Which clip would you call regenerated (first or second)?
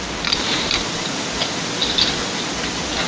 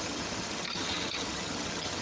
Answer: second